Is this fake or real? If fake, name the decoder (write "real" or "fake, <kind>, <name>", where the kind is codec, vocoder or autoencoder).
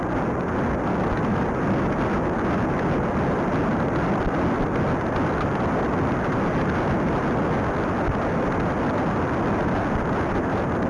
real